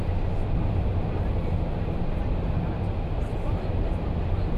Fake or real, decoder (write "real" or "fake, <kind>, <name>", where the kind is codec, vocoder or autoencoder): real